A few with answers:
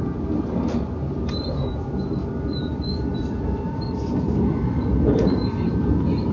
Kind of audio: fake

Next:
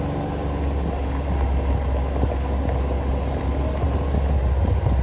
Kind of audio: real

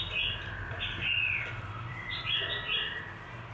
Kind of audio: fake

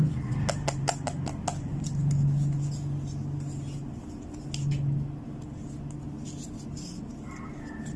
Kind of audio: real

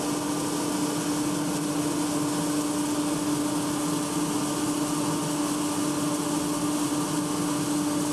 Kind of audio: real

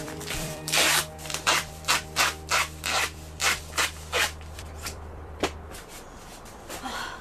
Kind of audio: fake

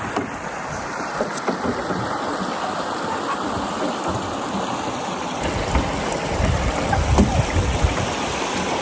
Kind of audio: real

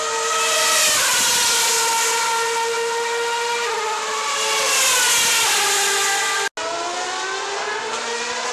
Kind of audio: real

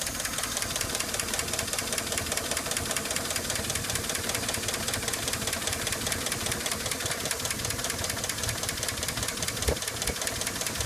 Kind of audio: fake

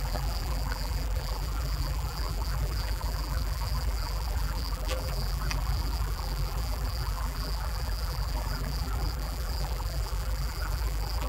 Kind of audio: fake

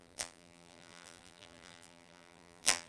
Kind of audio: fake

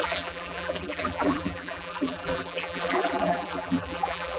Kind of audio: fake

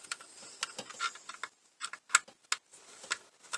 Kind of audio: real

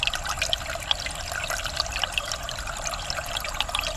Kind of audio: real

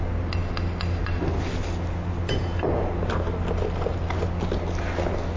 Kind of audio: real